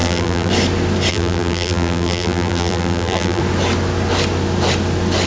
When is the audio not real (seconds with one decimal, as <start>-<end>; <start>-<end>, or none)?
0.0-0.5; 1.1-3.4